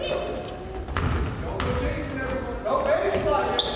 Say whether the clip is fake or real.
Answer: real